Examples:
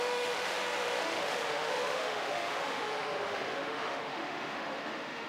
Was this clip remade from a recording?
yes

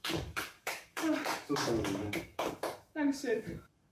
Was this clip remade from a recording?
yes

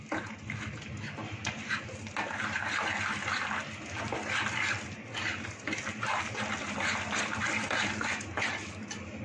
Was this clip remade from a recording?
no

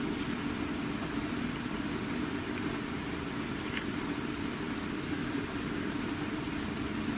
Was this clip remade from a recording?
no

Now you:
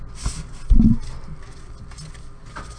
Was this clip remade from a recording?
no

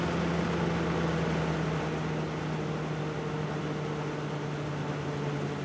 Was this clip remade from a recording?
no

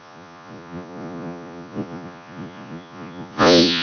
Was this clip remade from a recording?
yes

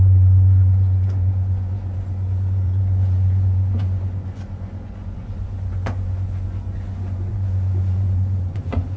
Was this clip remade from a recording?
yes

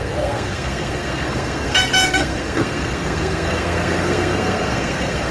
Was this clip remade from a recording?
yes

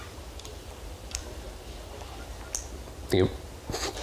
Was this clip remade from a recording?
no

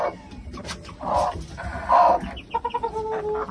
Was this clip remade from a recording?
no